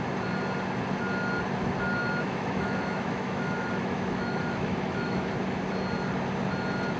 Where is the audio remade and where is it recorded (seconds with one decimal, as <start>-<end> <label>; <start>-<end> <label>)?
0.0-2.0 recorded; 2.0-5.3 remade; 5.3-7.0 recorded